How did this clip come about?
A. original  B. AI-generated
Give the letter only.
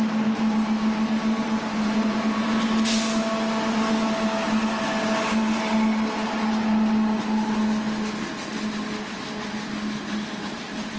A